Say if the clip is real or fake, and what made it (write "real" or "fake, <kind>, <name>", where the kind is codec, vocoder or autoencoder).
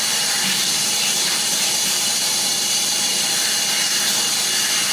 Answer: real